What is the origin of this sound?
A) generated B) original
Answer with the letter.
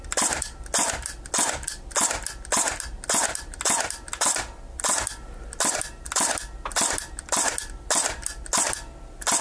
B